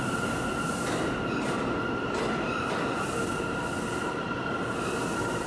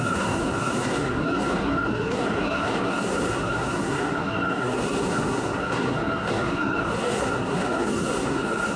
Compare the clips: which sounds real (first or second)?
first